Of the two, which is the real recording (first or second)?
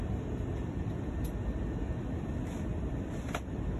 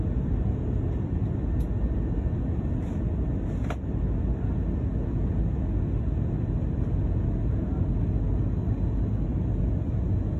second